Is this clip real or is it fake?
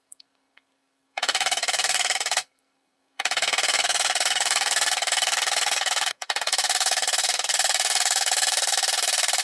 fake